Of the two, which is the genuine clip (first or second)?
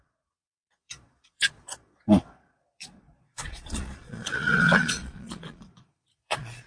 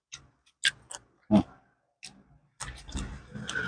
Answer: second